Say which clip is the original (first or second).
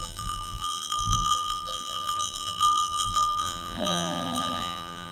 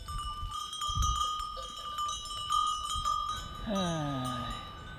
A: second